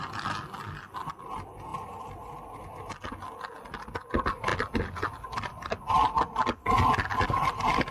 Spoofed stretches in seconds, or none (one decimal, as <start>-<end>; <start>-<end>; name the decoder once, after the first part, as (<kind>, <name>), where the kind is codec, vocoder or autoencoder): 1.7-2.7 (vocoder, BigVGAN v2); 4.5-5.8